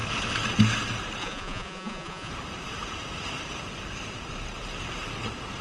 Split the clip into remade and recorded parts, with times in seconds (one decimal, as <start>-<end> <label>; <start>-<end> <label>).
0.0-1.2 recorded; 1.2-2.3 remade; 2.3-5.6 recorded